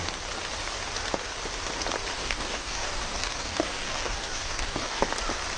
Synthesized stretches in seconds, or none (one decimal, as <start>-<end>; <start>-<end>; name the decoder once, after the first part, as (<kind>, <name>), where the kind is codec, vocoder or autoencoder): 2.1-5.1 (codec, DAC)